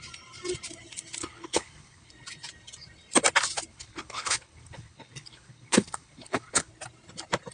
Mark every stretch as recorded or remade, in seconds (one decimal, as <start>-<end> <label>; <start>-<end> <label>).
0.0-1.2 recorded; 1.2-2.1 remade; 2.1-3.7 recorded; 3.7-6.7 remade; 6.7-7.5 recorded